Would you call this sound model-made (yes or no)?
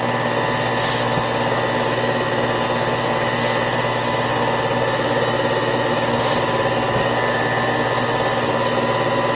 no